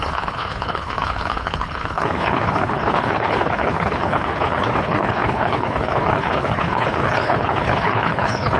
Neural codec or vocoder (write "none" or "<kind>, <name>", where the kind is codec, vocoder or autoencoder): codec, HILCodec